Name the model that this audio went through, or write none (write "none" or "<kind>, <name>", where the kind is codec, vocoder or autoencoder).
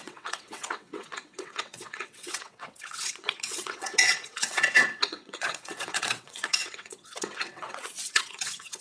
vocoder, WaveNeXt